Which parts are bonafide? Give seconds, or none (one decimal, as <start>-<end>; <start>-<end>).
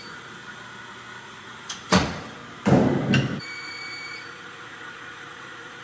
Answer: 0.4-1.2; 2.4-3.4